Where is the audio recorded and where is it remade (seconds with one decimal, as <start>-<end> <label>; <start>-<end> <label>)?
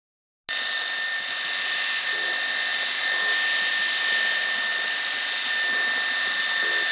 0.0-6.9 recorded